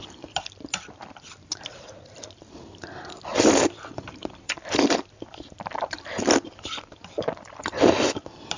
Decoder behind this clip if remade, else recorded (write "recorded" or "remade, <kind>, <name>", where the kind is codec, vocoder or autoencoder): remade, vocoder, BigVGAN v2